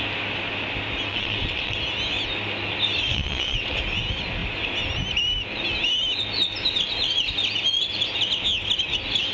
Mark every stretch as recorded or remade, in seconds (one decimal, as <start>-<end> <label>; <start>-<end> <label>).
0.0-1.1 recorded; 1.1-1.7 remade; 1.7-3.1 recorded; 3.1-3.8 remade; 3.8-9.3 recorded